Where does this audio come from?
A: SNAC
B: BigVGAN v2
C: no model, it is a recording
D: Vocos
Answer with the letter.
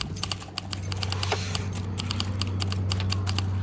C